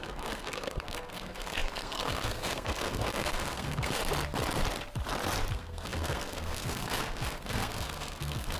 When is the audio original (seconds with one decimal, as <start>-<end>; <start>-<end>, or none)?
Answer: 4.0-5.5